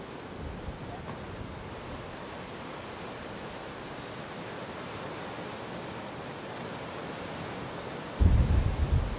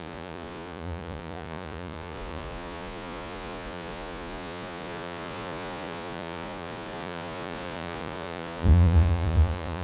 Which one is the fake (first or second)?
second